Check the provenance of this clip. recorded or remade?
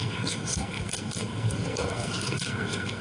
remade